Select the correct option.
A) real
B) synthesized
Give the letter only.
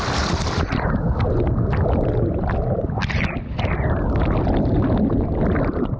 A